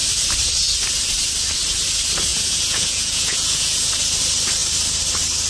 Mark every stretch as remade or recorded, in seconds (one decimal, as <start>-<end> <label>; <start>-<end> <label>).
0.0-2.3 recorded; 2.3-3.9 remade; 3.9-5.5 recorded